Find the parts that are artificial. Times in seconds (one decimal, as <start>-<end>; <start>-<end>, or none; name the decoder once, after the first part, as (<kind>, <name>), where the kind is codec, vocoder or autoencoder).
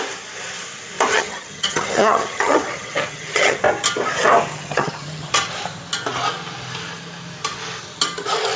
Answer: 1.1-3.6 (vocoder, HiFi-GAN); 4.5-5.3